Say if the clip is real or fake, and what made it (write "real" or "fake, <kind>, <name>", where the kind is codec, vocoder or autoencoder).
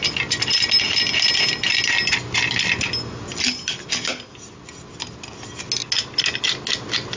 real